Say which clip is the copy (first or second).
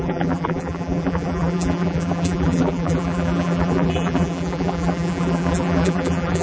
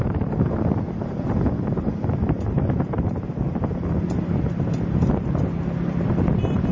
first